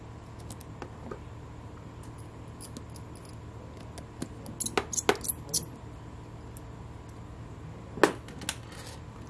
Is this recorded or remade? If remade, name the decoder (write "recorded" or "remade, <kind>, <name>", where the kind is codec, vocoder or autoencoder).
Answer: recorded